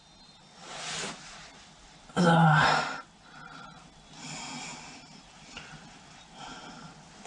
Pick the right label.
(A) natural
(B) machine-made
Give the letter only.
A